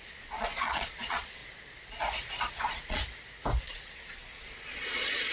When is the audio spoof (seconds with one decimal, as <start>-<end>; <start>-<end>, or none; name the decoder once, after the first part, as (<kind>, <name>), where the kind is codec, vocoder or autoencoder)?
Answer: 0.0-1.4 (vocoder, Vocos); 2.5-3.0; 3.6-5.3